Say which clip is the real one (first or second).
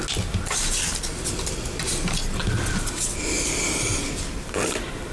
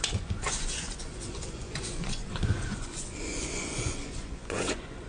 first